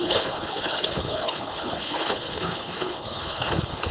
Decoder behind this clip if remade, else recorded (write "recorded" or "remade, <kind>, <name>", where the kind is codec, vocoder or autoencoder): remade, codec, HILCodec